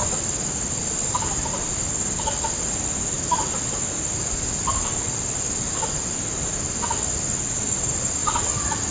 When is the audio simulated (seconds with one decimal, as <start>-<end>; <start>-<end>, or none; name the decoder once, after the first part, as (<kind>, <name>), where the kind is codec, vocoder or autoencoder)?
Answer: none

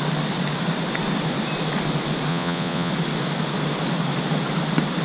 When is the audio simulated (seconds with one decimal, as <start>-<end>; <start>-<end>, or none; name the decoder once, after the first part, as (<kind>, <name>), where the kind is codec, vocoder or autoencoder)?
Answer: 2.3-2.9 (vocoder, Vocos)

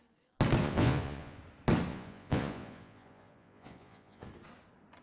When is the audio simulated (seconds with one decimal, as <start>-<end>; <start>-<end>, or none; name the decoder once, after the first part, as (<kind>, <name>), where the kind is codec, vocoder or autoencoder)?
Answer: 0.6-1.4 (vocoder, Vocos); 1.9-4.3

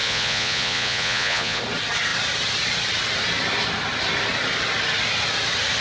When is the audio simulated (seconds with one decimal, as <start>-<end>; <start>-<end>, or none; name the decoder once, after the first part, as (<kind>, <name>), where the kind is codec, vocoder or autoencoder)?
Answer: 0.0-1.6 (vocoder, Vocos)

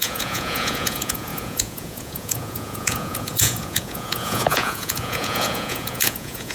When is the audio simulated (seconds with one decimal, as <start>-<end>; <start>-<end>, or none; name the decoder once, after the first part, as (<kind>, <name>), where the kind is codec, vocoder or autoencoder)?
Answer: 0.0-6.5 (vocoder, Vocos)

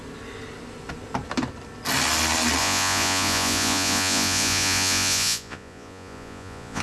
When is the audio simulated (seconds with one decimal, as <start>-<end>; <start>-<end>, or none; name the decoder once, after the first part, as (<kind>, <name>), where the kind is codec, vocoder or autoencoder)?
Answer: 2.6-6.8 (vocoder, Vocos)

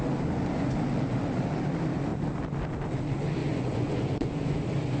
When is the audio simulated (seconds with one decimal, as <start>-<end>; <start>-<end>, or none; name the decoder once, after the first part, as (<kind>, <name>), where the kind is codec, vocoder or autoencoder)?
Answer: 3.4-4.6 (vocoder, Vocos)